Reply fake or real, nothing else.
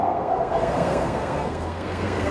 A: fake